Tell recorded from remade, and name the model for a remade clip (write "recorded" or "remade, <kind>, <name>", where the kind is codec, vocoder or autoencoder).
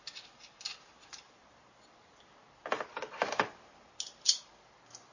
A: recorded